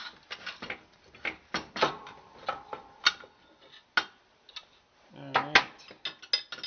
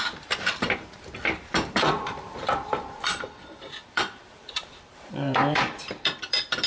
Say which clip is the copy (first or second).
second